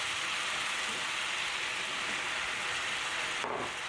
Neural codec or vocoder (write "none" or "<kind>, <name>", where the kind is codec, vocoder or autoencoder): none